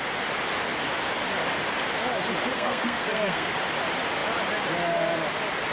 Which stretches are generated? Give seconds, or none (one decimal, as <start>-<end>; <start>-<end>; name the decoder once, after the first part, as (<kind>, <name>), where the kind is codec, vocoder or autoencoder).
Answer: 2.5-3.5 (codec, SNAC)